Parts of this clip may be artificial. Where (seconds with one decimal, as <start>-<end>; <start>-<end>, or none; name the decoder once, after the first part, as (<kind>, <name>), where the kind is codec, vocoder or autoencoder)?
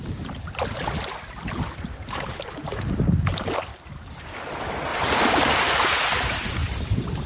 2.0-2.7 (vocoder, BigVGAN v2); 3.7-4.3; 4.9-6.0; 6.6-7.3